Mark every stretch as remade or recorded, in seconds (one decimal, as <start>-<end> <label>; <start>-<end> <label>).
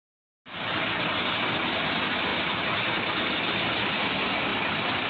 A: 0.0-5.1 recorded